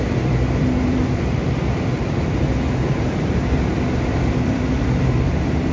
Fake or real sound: fake